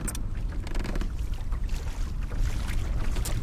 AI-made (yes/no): no